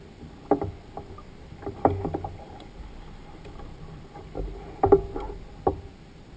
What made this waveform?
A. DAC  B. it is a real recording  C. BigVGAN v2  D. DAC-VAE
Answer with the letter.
B